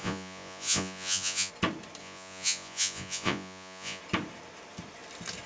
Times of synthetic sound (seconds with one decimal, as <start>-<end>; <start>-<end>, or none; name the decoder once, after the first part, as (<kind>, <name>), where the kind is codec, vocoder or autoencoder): 0.0-1.5 (vocoder, Vocos); 2.0-4.0